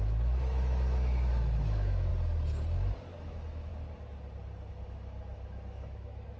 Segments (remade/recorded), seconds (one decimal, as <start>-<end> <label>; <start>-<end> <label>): 0.0-2.1 remade; 2.1-3.2 recorded; 3.2-3.7 remade; 3.7-4.7 recorded; 4.7-6.4 remade